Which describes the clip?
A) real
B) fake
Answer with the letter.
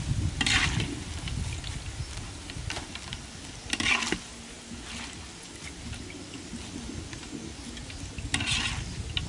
A